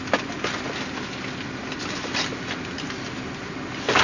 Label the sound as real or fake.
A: real